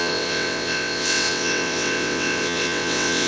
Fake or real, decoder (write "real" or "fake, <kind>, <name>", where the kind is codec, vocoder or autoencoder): fake, vocoder, WaveNeXt